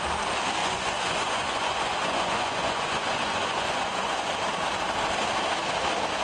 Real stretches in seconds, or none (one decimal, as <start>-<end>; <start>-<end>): 0.0-0.6; 4.3-6.2